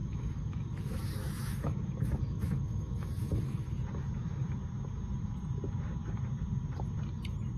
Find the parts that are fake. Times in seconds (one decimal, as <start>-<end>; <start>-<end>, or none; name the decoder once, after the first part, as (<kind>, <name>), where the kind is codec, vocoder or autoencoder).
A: 0.0-3.7 (autoencoder, DAC-VAE)